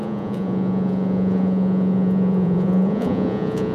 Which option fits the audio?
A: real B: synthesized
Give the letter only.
B